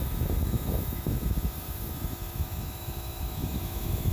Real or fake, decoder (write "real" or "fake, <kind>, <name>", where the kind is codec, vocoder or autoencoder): fake, autoencoder, DAC-VAE